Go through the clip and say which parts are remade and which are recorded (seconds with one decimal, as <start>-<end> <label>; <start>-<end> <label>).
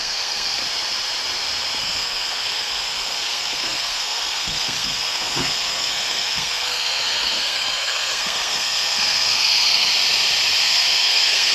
0.0-0.6 remade; 0.6-1.8 recorded; 1.8-9.9 remade; 9.9-10.6 recorded; 10.6-11.5 remade